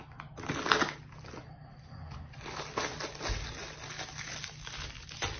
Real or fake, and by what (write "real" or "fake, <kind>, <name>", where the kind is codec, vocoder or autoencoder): real